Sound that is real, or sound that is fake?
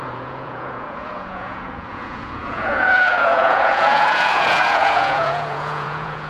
fake